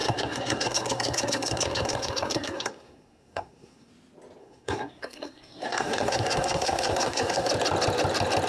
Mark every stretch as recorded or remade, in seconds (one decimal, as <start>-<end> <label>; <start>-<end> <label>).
0.0-3.9 remade; 3.9-4.4 recorded; 4.4-7.5 remade; 7.5-8.5 recorded